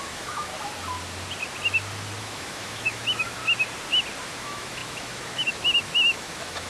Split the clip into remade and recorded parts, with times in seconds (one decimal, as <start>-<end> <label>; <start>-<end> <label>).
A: 0.0-0.5 remade; 0.5-2.2 recorded; 2.2-3.4 remade; 3.4-4.2 recorded; 4.2-6.7 remade